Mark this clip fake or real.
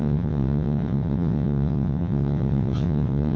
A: fake